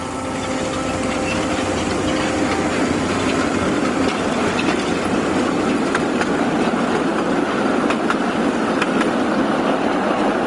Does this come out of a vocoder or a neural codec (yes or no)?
no